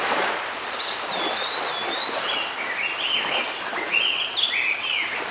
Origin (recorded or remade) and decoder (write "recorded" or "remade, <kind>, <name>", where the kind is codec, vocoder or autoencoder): recorded